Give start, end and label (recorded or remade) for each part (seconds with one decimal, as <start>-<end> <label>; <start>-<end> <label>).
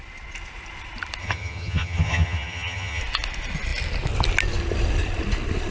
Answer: 0.0-1.2 recorded; 1.2-3.0 remade; 3.0-5.7 recorded